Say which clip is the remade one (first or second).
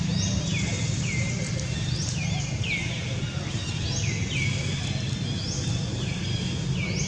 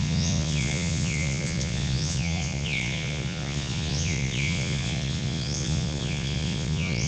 second